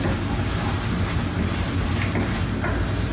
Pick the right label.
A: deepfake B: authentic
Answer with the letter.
B